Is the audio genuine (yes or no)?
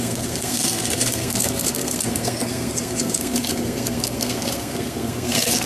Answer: no